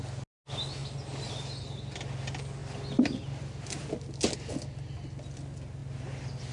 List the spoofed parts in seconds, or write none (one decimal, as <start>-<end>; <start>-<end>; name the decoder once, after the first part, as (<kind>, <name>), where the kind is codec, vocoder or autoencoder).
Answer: none